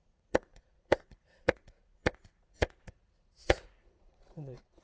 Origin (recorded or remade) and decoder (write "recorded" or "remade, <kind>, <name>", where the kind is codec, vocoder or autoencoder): remade, vocoder, Vocos